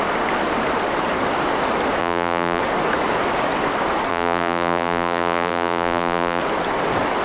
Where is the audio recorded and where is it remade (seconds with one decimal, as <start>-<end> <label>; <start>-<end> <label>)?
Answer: 0.0-2.0 recorded; 2.0-2.6 remade; 2.6-4.1 recorded; 4.1-6.4 remade; 6.4-7.2 recorded